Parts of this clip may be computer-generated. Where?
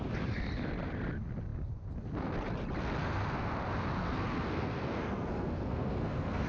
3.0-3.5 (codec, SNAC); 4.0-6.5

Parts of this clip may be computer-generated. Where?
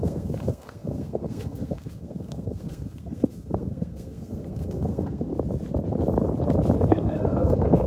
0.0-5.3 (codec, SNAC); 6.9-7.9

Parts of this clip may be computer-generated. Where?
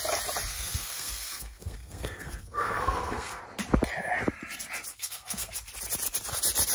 0.5-3.4 (codec, SNAC); 4.9-5.5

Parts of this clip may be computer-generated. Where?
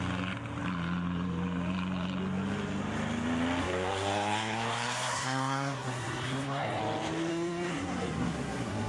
3.6-6.8 (codec, SNAC); 7.3-8.9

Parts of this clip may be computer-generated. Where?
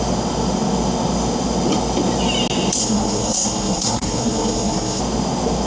2.8-5.0 (codec, SNAC)